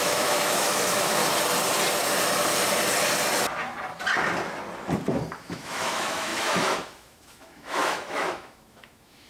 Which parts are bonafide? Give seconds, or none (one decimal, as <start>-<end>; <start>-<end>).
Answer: 1.2-5.4